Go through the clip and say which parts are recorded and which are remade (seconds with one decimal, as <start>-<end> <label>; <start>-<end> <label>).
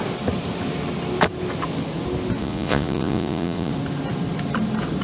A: 0.0-2.4 recorded; 2.4-3.7 remade; 3.7-5.0 recorded